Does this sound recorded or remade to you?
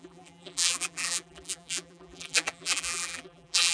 remade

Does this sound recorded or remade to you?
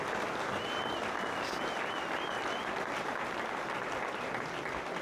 recorded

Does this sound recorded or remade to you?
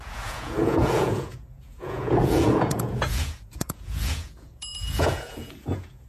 remade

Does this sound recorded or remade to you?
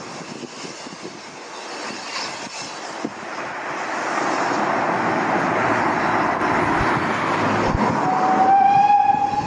recorded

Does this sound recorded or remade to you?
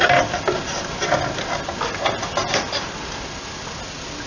recorded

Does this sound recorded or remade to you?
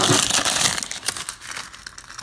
recorded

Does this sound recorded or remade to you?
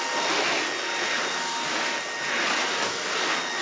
recorded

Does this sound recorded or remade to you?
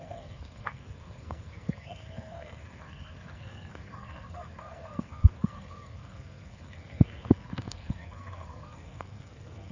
remade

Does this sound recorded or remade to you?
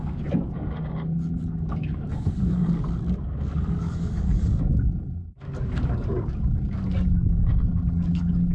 remade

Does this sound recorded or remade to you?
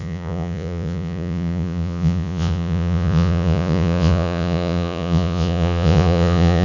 remade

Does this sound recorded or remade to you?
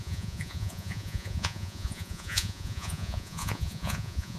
remade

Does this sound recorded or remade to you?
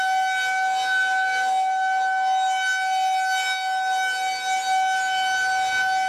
recorded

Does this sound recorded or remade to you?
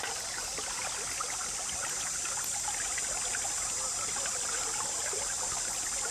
recorded